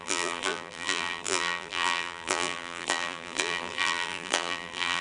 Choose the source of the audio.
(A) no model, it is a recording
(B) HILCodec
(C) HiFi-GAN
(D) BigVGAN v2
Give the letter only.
D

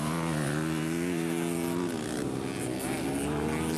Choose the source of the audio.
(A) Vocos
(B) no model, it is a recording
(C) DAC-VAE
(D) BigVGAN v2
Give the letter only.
B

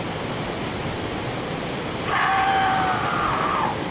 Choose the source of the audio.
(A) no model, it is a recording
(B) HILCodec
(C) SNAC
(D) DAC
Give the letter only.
A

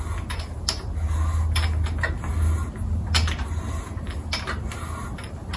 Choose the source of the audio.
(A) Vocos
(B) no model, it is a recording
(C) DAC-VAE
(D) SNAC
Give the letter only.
B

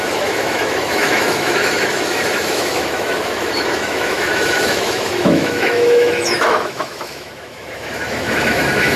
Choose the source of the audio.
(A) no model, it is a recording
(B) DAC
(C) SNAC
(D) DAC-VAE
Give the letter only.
D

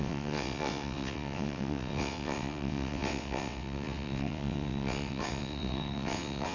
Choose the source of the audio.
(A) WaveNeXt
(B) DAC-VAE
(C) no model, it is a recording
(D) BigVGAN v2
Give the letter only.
A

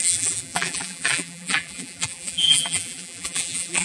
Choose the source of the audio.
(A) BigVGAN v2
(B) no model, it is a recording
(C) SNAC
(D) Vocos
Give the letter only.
A